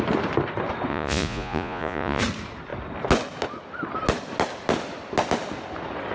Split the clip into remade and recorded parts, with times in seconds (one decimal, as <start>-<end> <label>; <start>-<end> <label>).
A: 0.0-0.9 recorded; 0.9-2.2 remade; 2.2-6.1 recorded